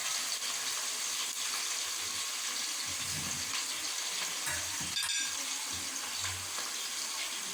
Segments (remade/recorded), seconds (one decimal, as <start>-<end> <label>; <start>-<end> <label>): 0.0-7.5 recorded